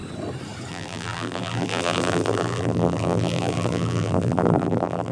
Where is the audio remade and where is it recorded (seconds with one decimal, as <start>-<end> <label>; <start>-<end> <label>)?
0.0-0.7 recorded; 0.7-5.1 remade